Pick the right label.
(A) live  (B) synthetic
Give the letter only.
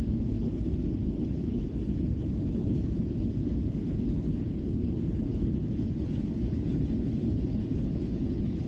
B